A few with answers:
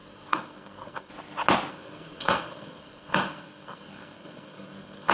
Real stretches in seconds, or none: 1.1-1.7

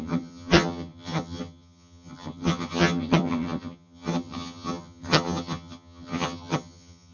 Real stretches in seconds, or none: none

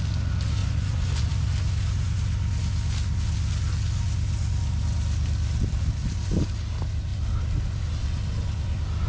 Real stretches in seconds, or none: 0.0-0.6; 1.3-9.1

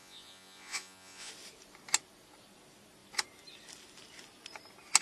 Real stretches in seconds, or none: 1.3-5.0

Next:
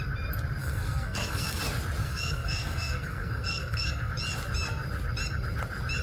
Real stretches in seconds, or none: 0.0-0.6; 1.6-2.0; 4.1-6.0

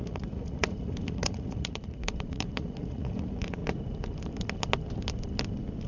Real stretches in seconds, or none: 3.6-5.9

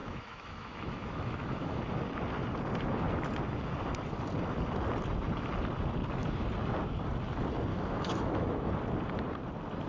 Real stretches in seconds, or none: 1.8-7.7; 8.7-9.9